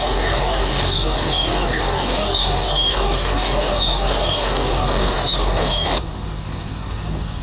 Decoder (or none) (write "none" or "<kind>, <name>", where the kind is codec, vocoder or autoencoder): codec, DAC